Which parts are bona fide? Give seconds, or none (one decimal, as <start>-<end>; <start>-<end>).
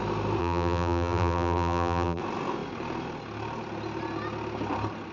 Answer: 0.0-0.4; 2.2-5.1